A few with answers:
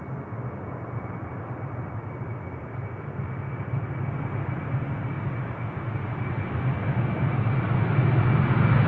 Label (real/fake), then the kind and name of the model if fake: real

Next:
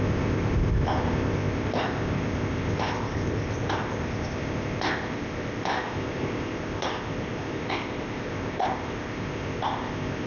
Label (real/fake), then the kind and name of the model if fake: fake, codec, ZipCodec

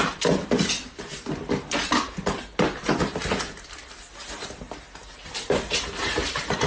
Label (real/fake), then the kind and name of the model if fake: real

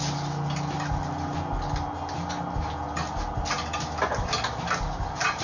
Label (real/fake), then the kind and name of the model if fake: real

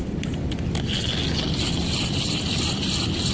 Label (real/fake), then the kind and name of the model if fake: real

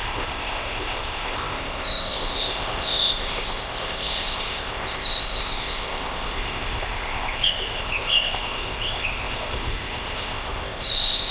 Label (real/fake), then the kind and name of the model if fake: fake, codec, ZipCodec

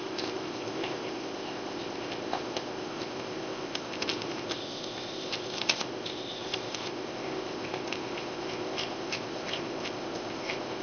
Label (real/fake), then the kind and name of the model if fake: fake, codec, ZipCodec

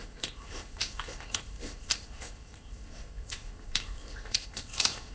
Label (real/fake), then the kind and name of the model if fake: fake, codec, ZipCodec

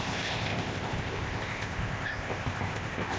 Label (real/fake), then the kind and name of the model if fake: fake, codec, ZipCodec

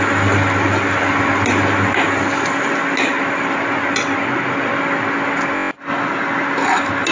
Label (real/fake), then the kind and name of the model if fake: real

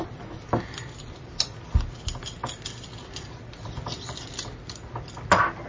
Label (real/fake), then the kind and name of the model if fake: real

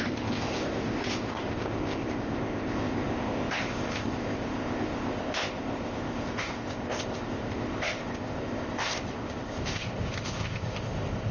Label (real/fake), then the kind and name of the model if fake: fake, codec, ZipCodec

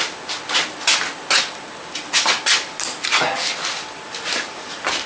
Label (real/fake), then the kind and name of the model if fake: real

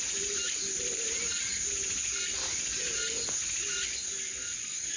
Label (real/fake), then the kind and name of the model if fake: real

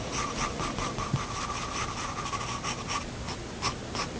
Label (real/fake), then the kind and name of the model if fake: real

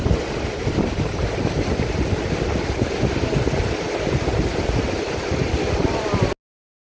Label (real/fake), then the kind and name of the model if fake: real